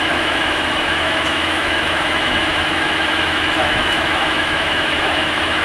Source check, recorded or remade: remade